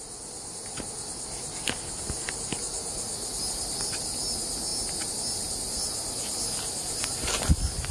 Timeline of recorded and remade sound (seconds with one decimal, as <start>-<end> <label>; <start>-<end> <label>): 0.0-7.9 recorded